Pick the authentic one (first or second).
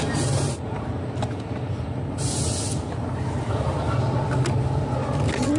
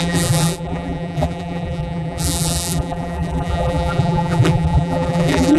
first